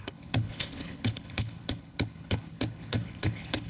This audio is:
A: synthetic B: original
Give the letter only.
A